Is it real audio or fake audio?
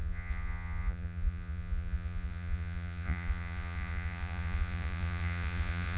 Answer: fake